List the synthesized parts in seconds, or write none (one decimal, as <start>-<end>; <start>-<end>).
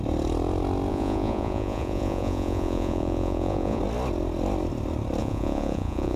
0.9-3.8; 5.2-6.2